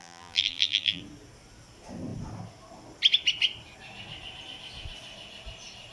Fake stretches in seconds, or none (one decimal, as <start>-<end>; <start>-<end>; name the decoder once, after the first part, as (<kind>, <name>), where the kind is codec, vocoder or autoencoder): 0.0-1.0 (vocoder, BigVGAN v2)